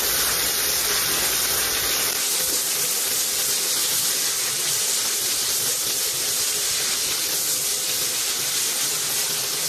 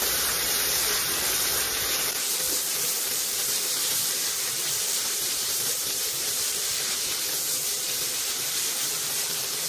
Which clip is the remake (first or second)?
second